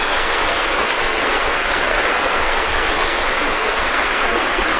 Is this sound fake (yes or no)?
yes